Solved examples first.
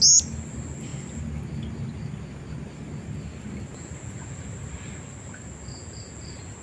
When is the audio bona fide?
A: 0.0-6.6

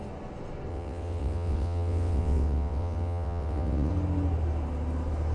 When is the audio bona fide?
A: 0.0-0.7; 3.9-5.3

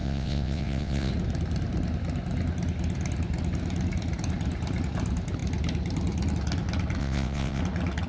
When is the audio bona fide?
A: 1.1-7.0; 7.6-8.1

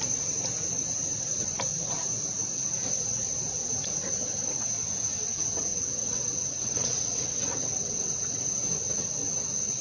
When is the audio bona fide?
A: 0.0-5.7; 8.5-9.8

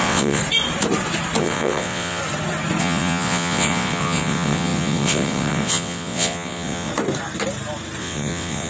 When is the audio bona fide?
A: 0.4-1.4; 2.2-2.8; 6.9-8.0

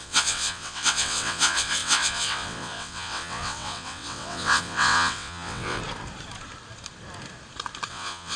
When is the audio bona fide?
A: 5.8-7.9